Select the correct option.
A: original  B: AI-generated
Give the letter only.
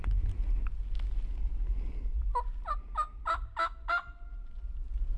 A